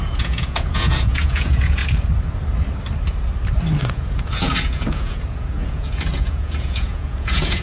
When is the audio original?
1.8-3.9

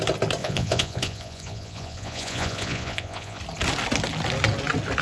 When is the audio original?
0.0-0.4; 3.4-5.0

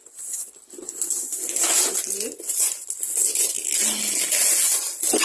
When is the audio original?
0.0-5.2

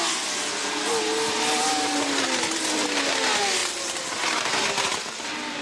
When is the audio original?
0.0-5.6